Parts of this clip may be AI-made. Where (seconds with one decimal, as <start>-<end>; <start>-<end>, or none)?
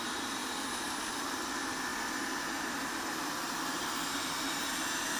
0.0-0.4; 1.3-1.9; 3.7-5.2